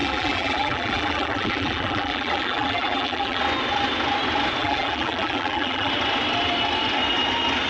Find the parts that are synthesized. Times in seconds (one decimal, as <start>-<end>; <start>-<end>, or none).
0.0-3.4; 4.6-5.9